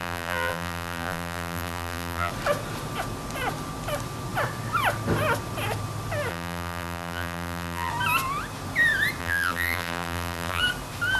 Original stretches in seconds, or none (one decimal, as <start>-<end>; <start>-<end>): 2.3-6.3; 7.9-9.2; 10.6-11.2